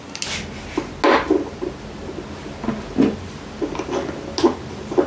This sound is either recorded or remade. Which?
recorded